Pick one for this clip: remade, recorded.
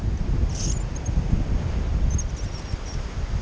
recorded